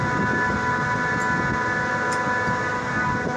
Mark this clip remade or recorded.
recorded